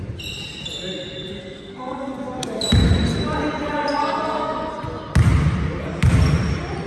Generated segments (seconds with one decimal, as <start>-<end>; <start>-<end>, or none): 1.4-2.2; 4.0-4.7